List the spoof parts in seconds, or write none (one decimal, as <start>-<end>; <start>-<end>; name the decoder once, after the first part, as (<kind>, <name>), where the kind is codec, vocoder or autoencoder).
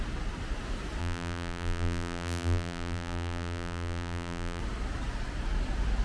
1.0-4.6 (vocoder, BigVGAN v2)